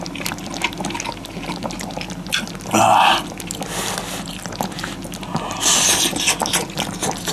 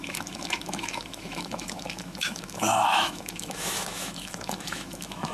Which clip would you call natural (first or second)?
first